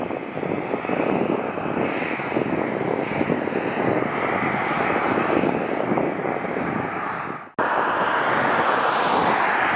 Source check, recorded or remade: recorded